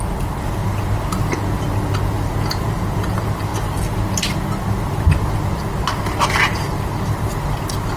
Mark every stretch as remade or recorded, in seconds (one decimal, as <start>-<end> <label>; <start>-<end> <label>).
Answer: 0.0-8.0 recorded